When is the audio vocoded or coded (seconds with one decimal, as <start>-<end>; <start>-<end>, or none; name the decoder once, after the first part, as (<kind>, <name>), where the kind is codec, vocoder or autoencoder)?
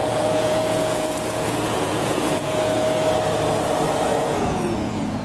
0.0-3.1 (vocoder, Vocos); 4.1-5.2